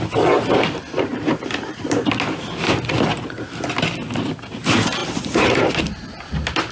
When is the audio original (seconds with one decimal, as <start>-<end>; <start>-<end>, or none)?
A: 0.0-1.1; 2.1-5.0; 5.7-6.7